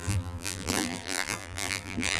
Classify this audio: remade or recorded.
remade